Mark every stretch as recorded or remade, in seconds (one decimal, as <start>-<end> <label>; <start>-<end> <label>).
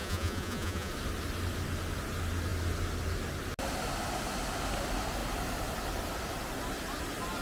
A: 0.0-0.9 remade; 0.9-7.4 recorded